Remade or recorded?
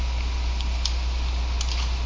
recorded